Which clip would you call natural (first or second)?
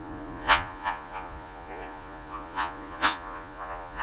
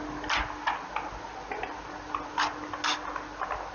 second